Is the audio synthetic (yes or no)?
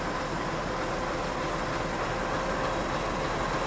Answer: no